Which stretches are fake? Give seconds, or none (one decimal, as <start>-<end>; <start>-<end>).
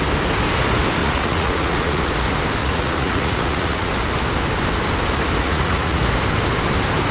1.0-2.1; 2.6-3.9; 5.4-6.0